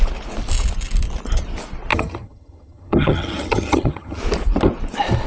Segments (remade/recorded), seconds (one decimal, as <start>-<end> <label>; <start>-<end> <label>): 0.0-1.9 recorded; 1.9-4.2 remade; 4.2-5.3 recorded